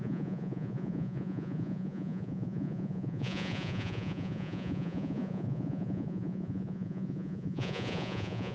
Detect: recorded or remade remade